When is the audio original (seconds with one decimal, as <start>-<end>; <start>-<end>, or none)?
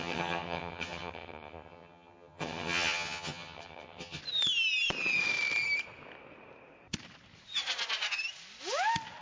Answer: 4.2-9.2